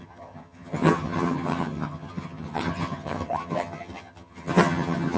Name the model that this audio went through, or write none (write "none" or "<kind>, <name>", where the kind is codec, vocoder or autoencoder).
vocoder, HiFi-GAN